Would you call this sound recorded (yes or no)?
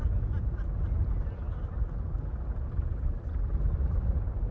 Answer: yes